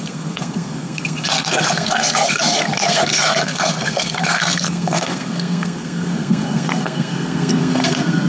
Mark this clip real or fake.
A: fake